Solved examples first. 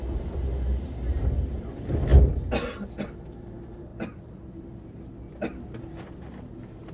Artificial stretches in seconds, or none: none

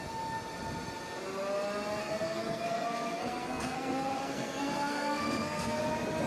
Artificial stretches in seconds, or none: 2.0-5.8 (codec, SNAC)

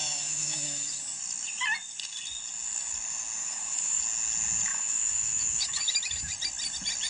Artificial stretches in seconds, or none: 0.0-1.2 (autoencoder, DAC-VAE); 3.4-4.0; 4.7-6.3

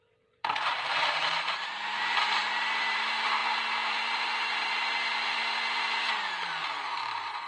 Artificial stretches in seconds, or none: 0.0-3.4 (vocoder, BigVGAN v2); 3.9-5.4; 6.6-7.5

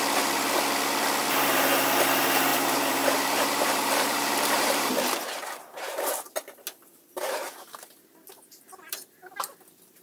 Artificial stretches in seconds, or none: 2.5-6.3 (vocoder, BigVGAN v2); 6.8-9.5

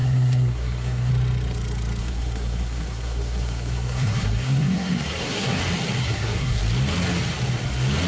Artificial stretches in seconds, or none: 0.0-1.1 (codec, SNAC); 2.0-5.6; 6.0-6.6

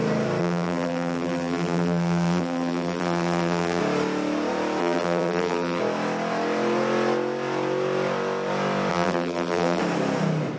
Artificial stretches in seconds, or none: 0.4-3.8 (vocoder, BigVGAN v2); 4.8-5.8; 8.9-9.8